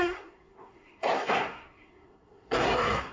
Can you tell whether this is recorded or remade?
remade